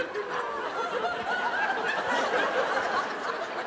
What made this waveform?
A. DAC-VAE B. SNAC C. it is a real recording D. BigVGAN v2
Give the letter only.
C